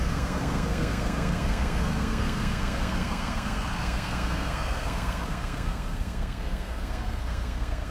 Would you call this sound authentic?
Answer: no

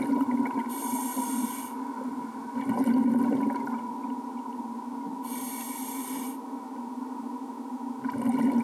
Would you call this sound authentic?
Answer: yes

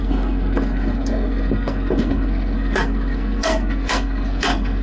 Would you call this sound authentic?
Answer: no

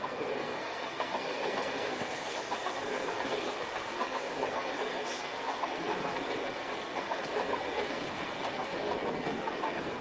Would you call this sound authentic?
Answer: no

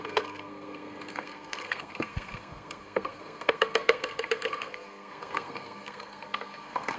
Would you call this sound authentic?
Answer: no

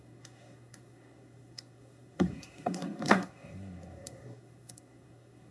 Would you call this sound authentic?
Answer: no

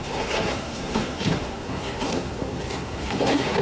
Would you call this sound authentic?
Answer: no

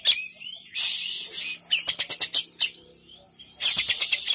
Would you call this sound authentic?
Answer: yes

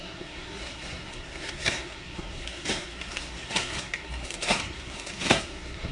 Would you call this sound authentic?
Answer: no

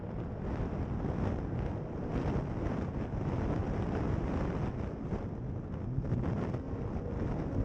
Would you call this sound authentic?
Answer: yes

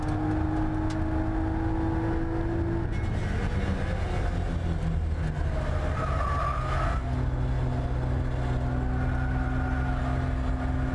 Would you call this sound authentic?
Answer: yes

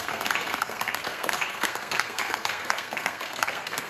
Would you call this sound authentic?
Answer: no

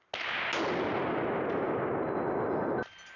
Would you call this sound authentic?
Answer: yes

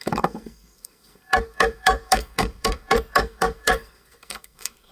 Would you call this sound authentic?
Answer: no